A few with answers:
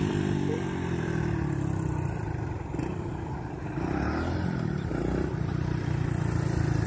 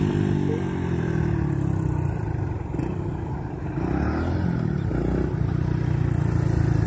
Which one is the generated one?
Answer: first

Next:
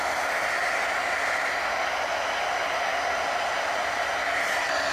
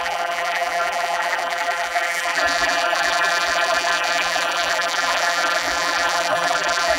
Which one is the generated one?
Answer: second